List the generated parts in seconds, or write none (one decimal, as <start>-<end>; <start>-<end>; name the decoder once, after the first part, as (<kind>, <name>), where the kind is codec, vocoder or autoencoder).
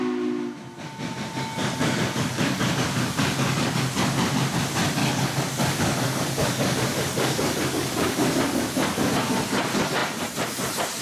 1.6-3.8 (codec, DAC); 5.0-9.1